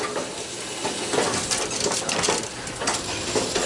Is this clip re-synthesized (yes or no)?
no